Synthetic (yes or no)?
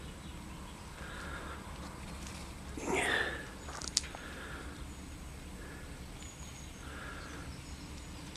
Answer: no